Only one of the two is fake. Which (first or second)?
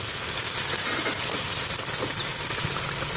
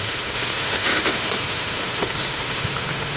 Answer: second